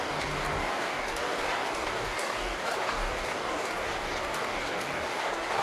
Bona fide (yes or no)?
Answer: no